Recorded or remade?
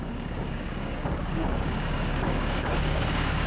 remade